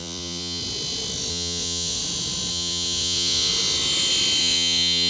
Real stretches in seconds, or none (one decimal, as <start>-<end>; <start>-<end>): 0.6-1.3; 2.0-2.5; 3.5-4.4

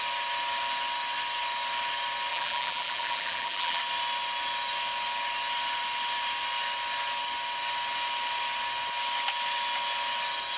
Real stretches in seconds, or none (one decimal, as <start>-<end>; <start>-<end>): 0.0-2.3; 3.8-10.6

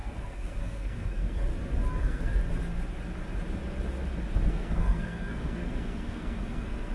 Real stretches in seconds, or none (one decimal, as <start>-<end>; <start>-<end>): 1.5-2.0; 2.4-4.5

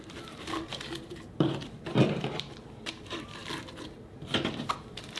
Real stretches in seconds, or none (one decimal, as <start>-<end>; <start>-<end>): none

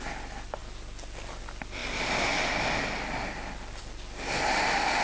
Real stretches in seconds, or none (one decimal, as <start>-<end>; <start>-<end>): 0.0-5.0

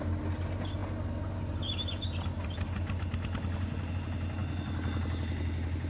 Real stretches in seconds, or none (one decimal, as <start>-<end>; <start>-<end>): 0.0-5.9

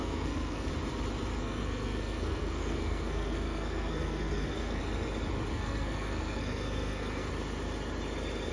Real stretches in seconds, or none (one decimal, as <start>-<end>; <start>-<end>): 0.7-1.3; 4.8-5.5; 7.3-8.5

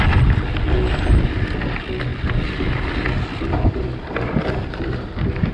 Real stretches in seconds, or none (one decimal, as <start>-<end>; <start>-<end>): 0.0-2.1